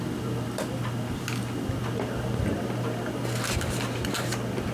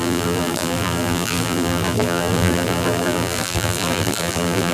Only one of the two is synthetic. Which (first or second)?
second